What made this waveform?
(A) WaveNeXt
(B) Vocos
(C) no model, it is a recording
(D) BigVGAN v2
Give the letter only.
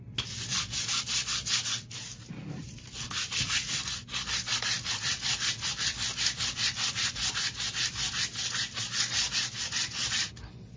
C